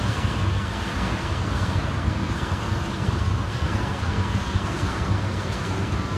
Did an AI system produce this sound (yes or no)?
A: yes